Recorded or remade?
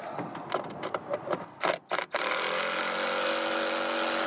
recorded